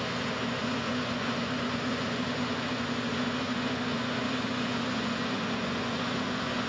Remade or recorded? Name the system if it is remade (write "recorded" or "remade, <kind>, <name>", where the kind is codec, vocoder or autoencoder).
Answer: remade, vocoder, Vocos